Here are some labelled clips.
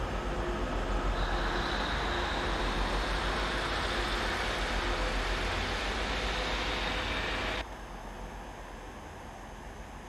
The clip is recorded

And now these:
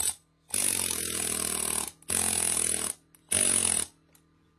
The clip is recorded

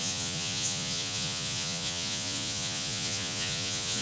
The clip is remade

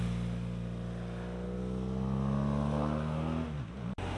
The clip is recorded